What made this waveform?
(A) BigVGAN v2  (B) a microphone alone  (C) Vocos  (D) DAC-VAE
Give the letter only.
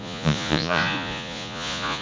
C